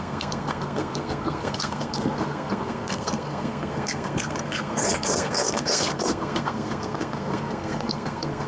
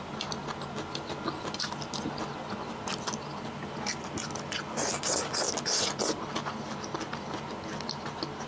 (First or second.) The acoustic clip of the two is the second